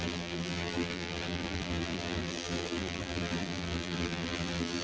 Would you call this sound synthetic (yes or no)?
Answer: yes